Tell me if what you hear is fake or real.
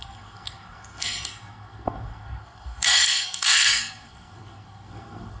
fake